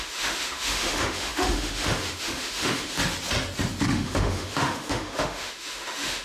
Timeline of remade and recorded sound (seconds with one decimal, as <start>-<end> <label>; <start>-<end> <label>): 0.0-3.0 remade; 3.0-3.8 recorded; 3.8-6.2 remade